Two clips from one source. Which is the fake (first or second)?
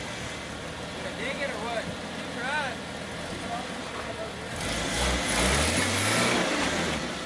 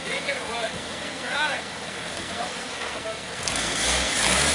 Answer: second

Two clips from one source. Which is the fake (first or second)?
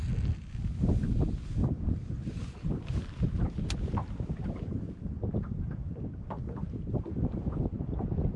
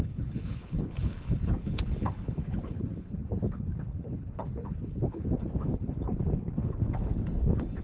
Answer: second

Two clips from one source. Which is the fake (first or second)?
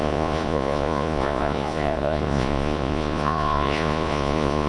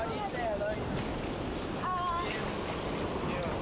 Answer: first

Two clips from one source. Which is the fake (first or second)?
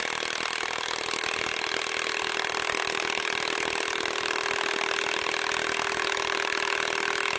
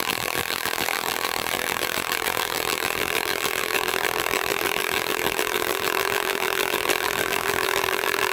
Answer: second